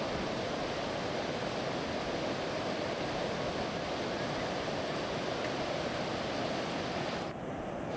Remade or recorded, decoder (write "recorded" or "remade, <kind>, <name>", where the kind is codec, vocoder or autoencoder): recorded